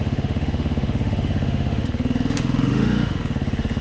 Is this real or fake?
fake